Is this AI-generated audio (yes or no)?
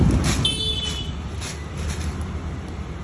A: no